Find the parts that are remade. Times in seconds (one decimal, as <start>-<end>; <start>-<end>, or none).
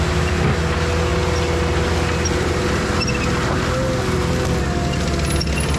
none